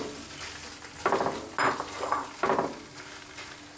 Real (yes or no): yes